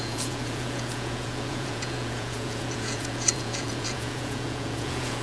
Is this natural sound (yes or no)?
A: no